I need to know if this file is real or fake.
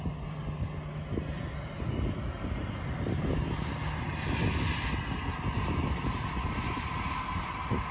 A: real